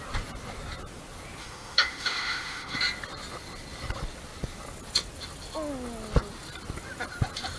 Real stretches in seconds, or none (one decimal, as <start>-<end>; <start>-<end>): 0.0-1.4; 2.8-7.6